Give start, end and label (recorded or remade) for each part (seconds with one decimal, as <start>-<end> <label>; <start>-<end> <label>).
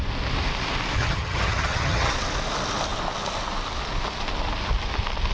0.0-1.0 recorded; 1.0-2.1 remade; 2.1-5.3 recorded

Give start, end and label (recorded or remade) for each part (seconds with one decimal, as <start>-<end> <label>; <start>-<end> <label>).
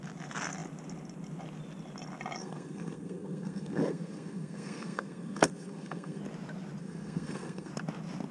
0.0-2.4 recorded; 2.4-6.2 remade; 6.2-6.8 recorded; 6.8-7.7 remade; 7.7-8.3 recorded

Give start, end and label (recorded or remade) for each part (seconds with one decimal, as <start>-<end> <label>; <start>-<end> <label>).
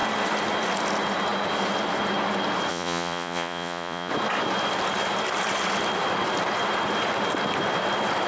0.0-2.7 recorded; 2.7-4.1 remade; 4.1-8.3 recorded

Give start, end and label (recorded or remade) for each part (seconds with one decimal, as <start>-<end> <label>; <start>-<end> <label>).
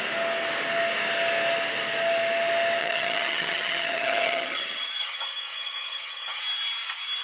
0.0-2.8 recorded; 2.8-6.4 remade; 6.4-7.2 recorded